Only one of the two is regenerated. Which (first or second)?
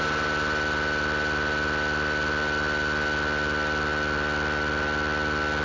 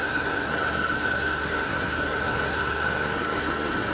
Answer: second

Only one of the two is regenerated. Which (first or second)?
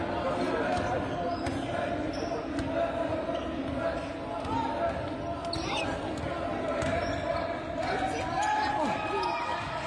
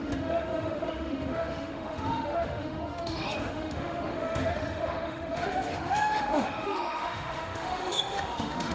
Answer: second